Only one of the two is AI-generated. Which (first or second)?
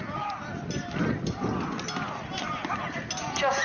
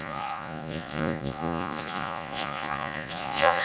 second